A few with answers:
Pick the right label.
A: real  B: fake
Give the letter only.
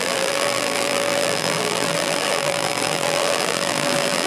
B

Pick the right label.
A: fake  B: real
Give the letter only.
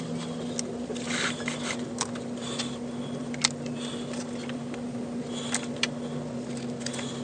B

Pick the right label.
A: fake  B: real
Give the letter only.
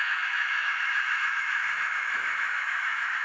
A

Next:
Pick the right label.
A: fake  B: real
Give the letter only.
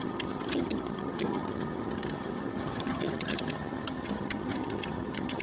A